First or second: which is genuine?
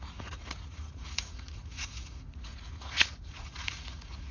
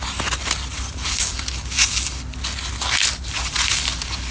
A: second